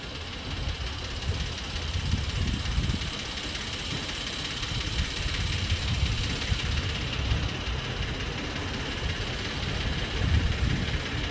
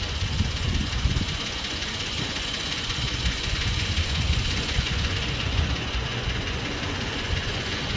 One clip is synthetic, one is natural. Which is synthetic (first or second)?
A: second